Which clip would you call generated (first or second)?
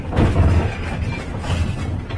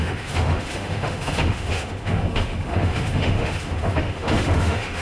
second